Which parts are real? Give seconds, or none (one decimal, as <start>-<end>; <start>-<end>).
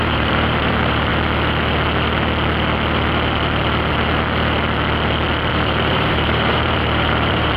1.1-5.5